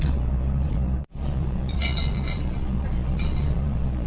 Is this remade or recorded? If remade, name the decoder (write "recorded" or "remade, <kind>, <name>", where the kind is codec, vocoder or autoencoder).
remade, vocoder, Vocos